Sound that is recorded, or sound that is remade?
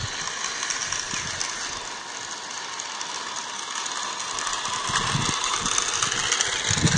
recorded